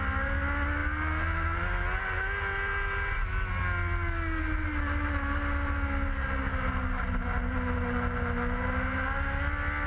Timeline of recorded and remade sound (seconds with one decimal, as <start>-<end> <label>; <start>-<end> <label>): 0.0-9.9 recorded